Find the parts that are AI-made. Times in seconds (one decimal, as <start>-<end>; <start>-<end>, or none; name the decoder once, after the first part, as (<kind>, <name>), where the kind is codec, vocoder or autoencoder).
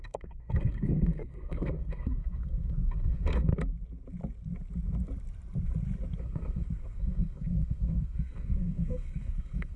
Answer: 0.0-3.5 (codec, SNAC); 6.2-9.8